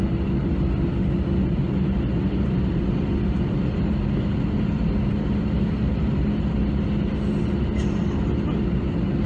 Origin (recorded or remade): recorded